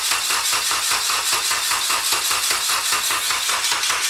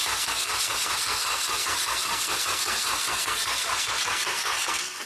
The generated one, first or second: second